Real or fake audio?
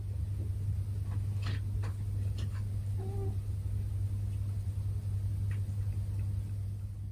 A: real